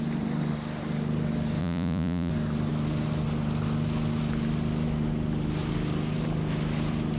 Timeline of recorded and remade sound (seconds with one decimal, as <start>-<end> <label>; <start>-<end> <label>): 0.0-1.6 recorded; 1.6-2.3 remade; 2.3-7.2 recorded